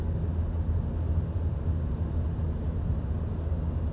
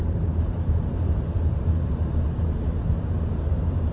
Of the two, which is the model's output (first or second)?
second